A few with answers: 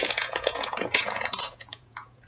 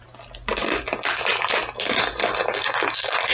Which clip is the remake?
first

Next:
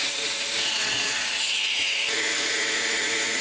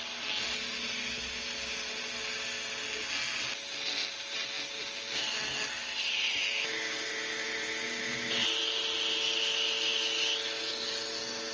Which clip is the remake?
first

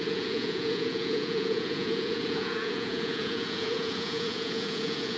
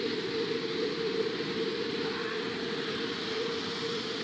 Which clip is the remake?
first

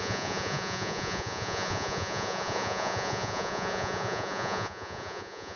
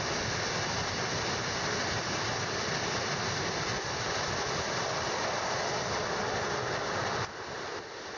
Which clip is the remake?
first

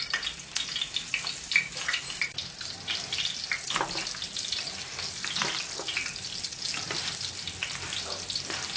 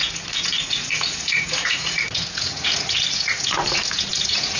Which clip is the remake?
second